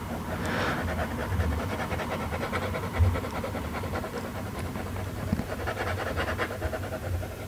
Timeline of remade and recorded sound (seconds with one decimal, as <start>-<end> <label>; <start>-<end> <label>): 0.0-1.2 recorded; 1.2-5.7 remade; 5.7-7.5 recorded